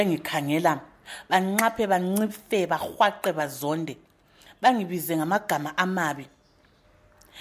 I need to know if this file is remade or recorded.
recorded